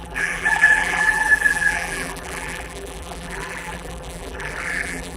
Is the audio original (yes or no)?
no